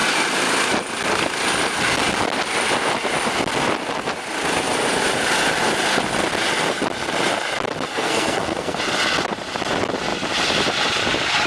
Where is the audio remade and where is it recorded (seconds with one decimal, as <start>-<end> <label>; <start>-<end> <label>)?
0.0-7.9 recorded; 7.9-8.8 remade; 8.8-11.5 recorded